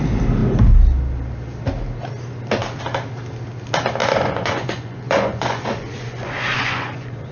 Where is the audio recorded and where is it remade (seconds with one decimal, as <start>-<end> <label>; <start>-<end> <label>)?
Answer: 0.0-4.0 recorded; 4.0-7.3 remade